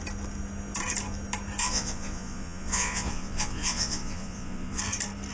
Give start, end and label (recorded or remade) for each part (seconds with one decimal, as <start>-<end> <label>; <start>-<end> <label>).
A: 0.0-1.6 recorded; 1.6-4.8 remade; 4.8-5.3 recorded